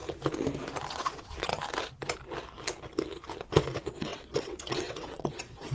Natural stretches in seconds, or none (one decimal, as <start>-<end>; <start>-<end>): 0.0-0.9; 1.5-3.4